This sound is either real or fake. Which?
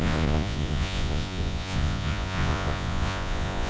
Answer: fake